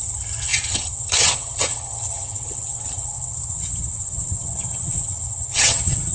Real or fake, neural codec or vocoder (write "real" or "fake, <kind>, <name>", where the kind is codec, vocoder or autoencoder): fake, vocoder, HiFi-GAN